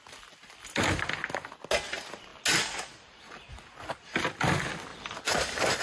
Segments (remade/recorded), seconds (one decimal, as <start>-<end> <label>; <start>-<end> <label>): 0.0-4.9 recorded; 4.9-5.8 remade